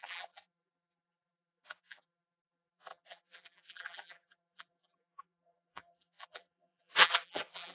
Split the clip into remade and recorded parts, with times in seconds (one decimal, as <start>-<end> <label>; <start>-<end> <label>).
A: 0.0-7.7 remade